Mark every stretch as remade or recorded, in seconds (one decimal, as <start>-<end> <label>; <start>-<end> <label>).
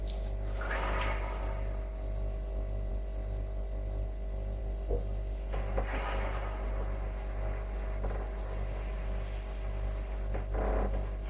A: 0.0-11.3 recorded